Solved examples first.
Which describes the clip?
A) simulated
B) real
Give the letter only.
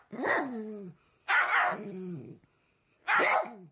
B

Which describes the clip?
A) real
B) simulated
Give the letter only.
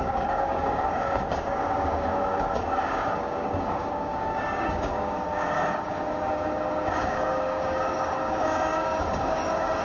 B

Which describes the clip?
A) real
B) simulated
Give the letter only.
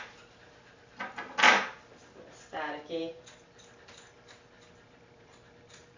A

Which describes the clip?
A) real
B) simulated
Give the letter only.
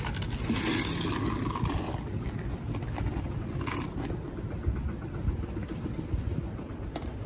A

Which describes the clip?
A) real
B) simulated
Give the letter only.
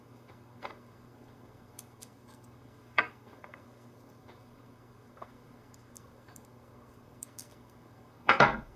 B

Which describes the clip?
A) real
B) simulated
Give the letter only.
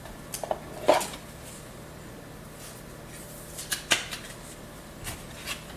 A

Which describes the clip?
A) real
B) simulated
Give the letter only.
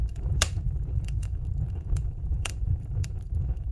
B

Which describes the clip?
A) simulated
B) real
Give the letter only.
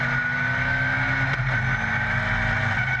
B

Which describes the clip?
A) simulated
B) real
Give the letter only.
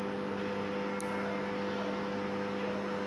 B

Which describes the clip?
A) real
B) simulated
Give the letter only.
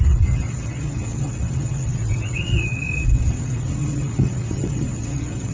B